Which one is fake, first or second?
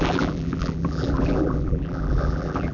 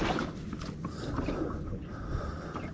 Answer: first